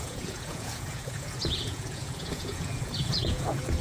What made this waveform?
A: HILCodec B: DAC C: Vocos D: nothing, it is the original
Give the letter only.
C